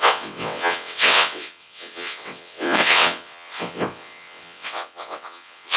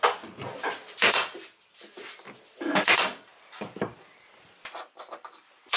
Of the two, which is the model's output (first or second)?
first